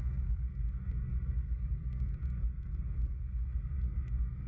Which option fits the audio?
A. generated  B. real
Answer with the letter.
A